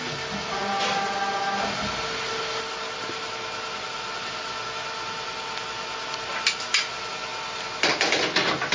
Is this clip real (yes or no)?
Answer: yes